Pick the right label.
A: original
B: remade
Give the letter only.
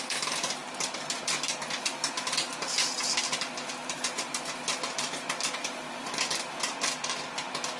A